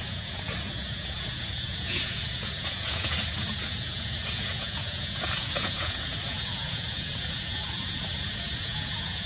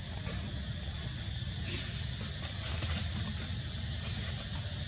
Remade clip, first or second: first